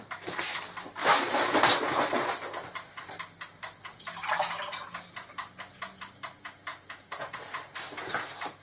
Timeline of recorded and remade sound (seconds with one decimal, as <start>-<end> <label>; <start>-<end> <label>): 0.0-6.7 recorded; 6.7-7.4 remade; 7.4-8.6 recorded